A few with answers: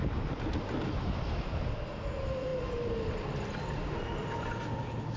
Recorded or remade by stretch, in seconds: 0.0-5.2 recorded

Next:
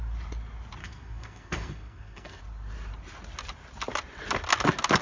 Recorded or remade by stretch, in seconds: 0.0-0.8 recorded; 0.8-2.4 remade; 2.4-5.0 recorded

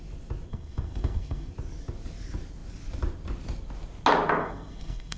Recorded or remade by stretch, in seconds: 0.0-0.5 recorded; 0.5-1.5 remade; 1.5-4.4 recorded; 4.4-5.2 remade

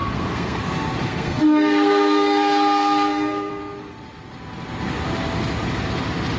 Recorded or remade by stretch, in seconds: 0.0-0.6 remade; 0.6-1.1 recorded; 1.1-3.5 remade; 3.5-6.4 recorded